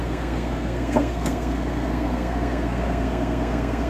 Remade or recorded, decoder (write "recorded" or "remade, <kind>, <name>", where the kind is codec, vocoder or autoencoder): remade, codec, SNAC